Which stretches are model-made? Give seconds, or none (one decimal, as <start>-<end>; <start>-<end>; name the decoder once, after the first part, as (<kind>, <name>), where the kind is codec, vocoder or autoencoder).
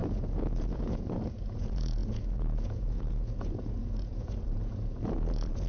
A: 0.0-5.7 (vocoder, Vocos)